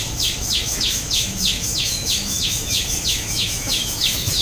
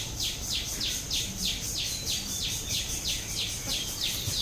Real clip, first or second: second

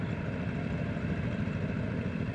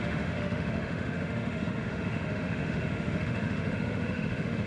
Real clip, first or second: first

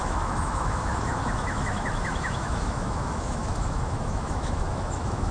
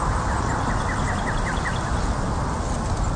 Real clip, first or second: second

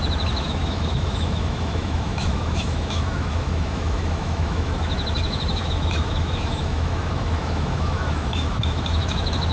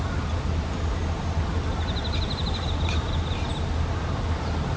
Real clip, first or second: second